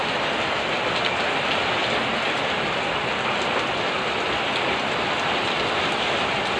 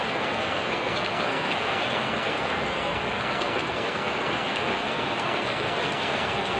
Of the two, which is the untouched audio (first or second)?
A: first